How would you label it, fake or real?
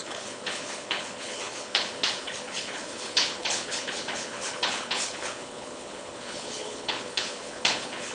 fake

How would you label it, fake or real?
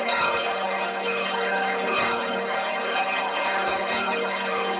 fake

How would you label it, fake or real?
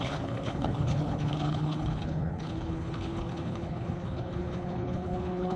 fake